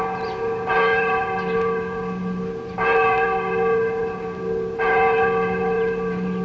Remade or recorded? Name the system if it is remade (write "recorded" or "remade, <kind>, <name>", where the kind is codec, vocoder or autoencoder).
recorded